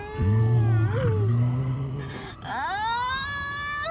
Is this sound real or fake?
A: real